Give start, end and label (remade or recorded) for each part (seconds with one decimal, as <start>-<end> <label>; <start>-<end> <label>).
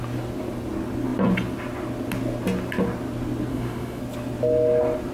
0.0-3.5 recorded; 3.5-4.0 remade; 4.0-5.1 recorded